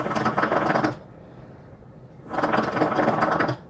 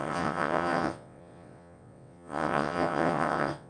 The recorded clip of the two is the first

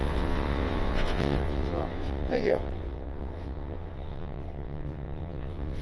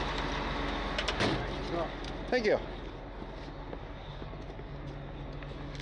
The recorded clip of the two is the second